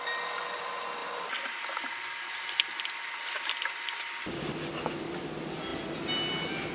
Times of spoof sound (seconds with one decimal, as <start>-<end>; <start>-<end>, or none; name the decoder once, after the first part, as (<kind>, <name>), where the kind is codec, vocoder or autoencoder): 1.0-5.0 (vocoder, BigVGAN v2)